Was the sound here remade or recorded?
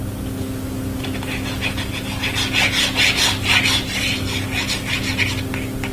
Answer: recorded